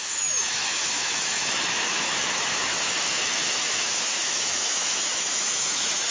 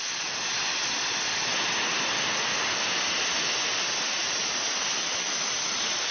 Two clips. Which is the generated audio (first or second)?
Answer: first